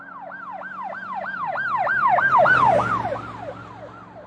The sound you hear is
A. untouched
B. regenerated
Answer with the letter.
A